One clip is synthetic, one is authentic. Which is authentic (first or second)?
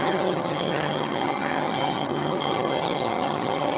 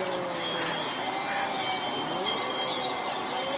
second